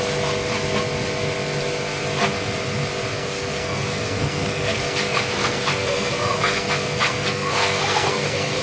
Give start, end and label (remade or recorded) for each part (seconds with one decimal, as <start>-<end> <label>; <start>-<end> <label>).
0.0-3.1 recorded; 3.1-8.6 remade

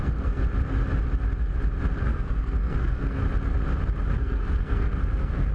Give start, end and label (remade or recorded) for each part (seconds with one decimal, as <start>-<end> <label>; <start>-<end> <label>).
0.0-0.4 remade; 0.4-2.0 recorded; 2.0-3.2 remade; 3.2-4.1 recorded; 4.1-5.5 remade

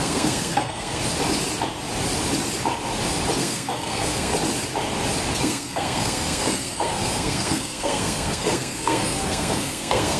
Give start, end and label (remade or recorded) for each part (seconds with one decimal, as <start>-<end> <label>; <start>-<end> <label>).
0.0-1.0 remade; 1.0-3.4 recorded; 3.4-4.3 remade; 4.3-5.4 recorded; 5.4-10.2 remade

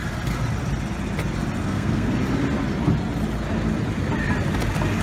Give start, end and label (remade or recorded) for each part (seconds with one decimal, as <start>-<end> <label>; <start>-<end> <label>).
0.0-1.6 recorded; 1.6-2.1 remade; 2.1-5.0 recorded

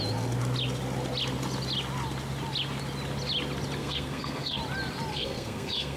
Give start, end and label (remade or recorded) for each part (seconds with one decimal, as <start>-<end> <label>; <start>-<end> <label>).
0.0-3.8 recorded; 3.8-4.6 remade; 4.6-5.1 recorded; 5.1-6.0 remade

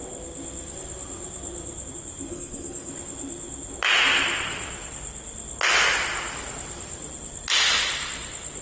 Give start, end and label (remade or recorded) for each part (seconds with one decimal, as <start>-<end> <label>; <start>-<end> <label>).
0.0-2.3 recorded; 2.3-2.9 remade; 2.9-8.6 recorded